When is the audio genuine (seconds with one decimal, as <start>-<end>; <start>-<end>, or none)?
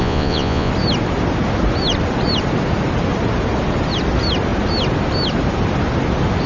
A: 0.7-6.5